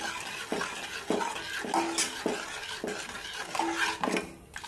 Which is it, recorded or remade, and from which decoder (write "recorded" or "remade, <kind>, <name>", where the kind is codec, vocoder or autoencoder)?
recorded